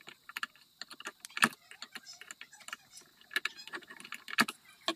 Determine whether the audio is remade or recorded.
recorded